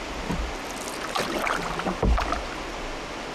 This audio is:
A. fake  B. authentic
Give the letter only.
B